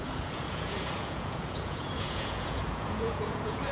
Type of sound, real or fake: fake